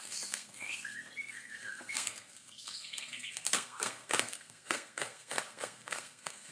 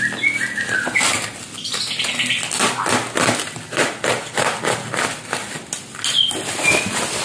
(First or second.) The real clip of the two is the second